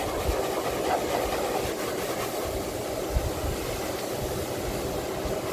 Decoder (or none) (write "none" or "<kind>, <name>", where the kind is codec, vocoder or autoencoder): none